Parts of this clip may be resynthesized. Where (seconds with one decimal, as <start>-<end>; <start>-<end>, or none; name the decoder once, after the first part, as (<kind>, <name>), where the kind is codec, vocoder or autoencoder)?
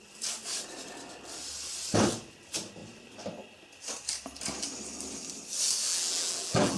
5.9-6.8 (vocoder, BigVGAN v2)